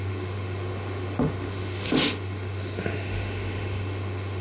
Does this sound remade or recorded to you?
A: remade